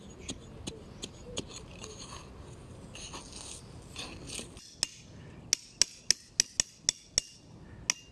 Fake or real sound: real